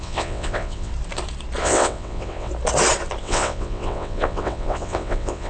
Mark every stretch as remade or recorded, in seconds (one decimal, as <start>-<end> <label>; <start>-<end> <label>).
0.0-0.9 remade; 0.9-1.6 recorded; 1.6-2.5 remade; 2.5-3.2 recorded; 3.2-5.5 remade